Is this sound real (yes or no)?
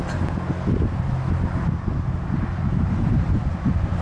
yes